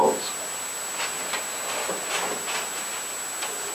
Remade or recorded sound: recorded